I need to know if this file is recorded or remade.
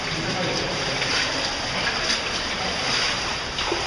recorded